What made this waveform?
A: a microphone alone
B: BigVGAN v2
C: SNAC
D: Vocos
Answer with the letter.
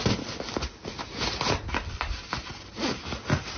A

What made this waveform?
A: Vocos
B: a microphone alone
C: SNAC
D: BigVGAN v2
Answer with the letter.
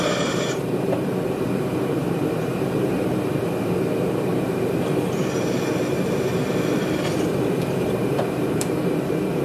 D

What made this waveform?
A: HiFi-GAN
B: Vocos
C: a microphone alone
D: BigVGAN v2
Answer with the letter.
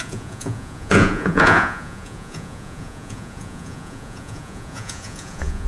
B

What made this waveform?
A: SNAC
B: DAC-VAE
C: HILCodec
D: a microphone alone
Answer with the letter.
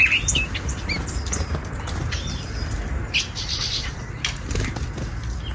D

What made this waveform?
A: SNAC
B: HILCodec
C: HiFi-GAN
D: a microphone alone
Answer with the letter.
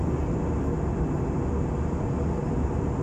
D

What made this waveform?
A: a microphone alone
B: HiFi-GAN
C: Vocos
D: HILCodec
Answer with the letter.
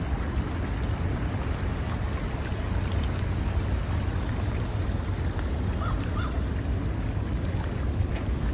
A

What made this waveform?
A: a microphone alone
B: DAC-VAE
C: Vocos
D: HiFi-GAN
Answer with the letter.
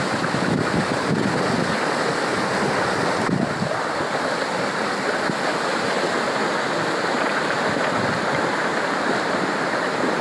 A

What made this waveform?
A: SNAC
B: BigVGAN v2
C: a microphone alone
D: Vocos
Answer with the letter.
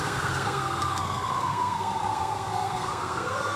A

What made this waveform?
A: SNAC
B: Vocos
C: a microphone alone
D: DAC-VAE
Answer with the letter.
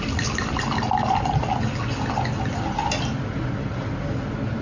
C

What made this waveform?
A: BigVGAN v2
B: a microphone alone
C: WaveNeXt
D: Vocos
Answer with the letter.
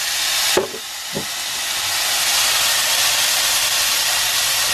B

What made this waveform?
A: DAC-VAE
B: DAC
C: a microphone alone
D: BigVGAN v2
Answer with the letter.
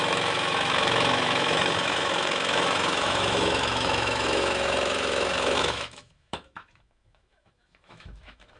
A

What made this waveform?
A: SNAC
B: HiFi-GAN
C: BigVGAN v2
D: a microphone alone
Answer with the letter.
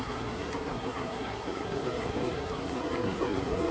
A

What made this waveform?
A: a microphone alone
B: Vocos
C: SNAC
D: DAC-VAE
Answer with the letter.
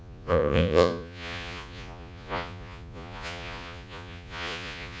B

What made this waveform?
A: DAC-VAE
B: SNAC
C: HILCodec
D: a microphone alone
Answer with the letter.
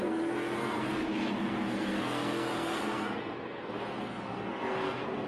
B